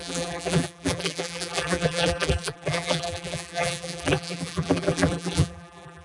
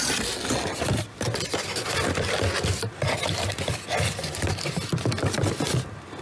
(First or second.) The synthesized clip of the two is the first